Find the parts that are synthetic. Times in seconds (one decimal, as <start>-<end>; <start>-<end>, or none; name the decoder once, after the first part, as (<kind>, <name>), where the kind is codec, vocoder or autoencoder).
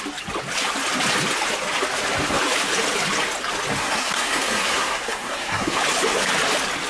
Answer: 3.8-5.8 (codec, SNAC)